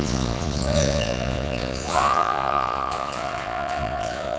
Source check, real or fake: fake